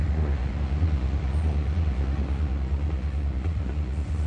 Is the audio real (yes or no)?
no